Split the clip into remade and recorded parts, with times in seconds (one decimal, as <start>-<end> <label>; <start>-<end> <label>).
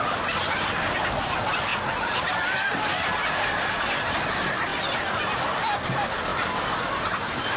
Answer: 0.0-7.6 recorded